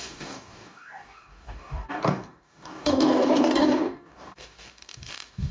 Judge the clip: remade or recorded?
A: remade